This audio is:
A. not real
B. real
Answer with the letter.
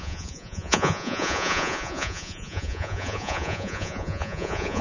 A